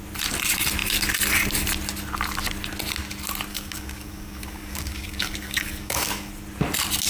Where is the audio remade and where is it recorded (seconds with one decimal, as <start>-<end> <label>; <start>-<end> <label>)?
0.0-3.5 recorded; 3.5-6.3 remade; 6.3-7.1 recorded